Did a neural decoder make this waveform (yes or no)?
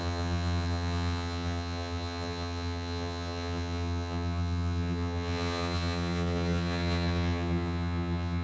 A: yes